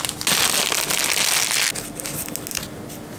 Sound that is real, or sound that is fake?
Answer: real